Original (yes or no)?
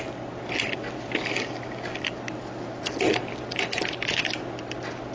yes